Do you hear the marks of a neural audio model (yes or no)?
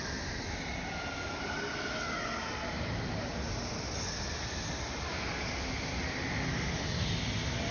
no